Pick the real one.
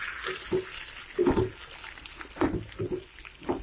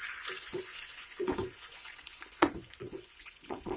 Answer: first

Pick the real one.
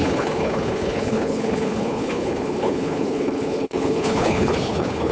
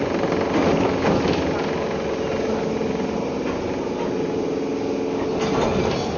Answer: second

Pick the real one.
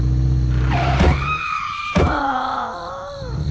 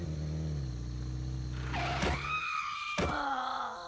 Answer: second